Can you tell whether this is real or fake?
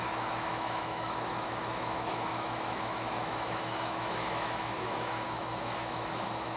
fake